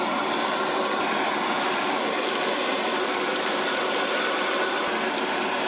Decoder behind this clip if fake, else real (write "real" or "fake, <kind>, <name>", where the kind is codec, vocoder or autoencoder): real